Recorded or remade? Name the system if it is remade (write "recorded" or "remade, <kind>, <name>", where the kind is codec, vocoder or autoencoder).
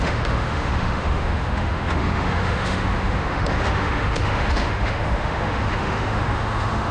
remade, autoencoder, DAC-VAE